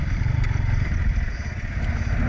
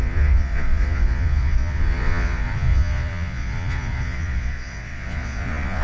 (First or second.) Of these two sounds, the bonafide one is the first